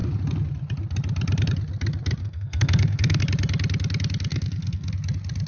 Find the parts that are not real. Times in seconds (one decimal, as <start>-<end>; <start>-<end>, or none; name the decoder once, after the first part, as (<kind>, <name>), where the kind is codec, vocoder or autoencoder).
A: 2.2-3.2 (codec, SNAC); 4.3-4.9